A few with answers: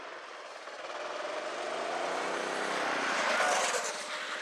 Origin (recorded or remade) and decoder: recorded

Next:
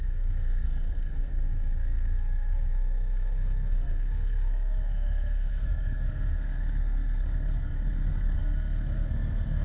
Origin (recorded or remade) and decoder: remade, codec, SNAC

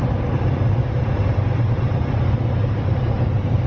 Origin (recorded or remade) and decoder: remade, vocoder, BigVGAN v2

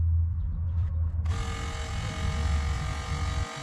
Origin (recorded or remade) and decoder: recorded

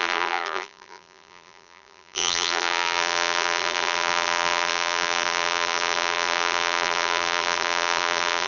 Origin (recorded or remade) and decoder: remade, vocoder, BigVGAN v2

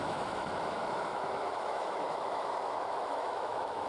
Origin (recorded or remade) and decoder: remade, autoencoder, DAC-VAE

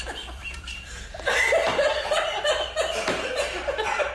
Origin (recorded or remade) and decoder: remade, vocoder, BigVGAN v2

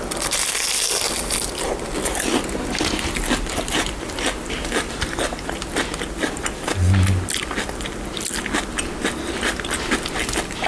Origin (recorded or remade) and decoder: recorded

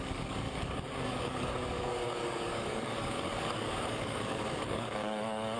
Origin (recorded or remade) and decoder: remade, codec, DAC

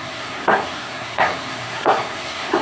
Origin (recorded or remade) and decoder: remade, codec, SNAC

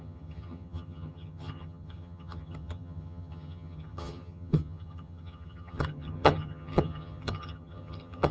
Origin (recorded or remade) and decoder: remade, vocoder, HiFi-GAN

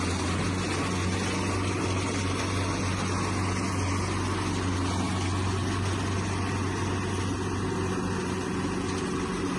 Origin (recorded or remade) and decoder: recorded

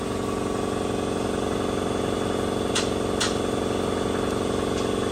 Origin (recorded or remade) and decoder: recorded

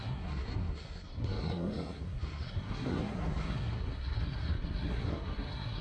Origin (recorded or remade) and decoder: remade, codec, SNAC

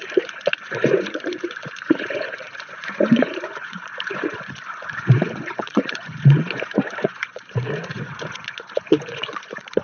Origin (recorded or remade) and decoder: remade, vocoder, Vocos